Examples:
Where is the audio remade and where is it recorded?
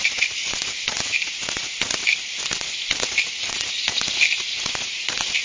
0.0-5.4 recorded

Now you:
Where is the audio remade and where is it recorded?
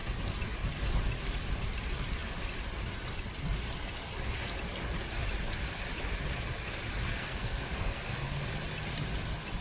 0.0-7.1 recorded; 7.1-8.5 remade; 8.5-9.6 recorded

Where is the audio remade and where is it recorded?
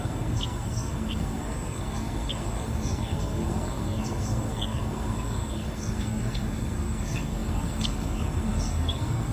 0.0-9.3 remade